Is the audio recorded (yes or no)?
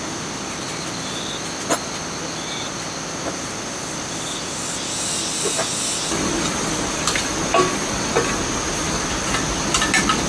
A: yes